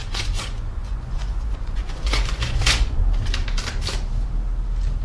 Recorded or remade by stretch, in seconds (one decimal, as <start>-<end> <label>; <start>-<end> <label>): 0.0-3.0 remade; 3.0-5.0 recorded